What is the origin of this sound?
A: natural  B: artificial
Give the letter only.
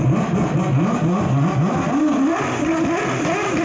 A